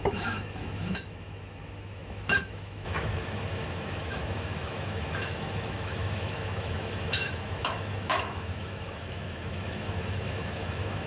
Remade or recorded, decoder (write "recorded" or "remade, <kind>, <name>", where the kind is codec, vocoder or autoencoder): remade, autoencoder, DAC-VAE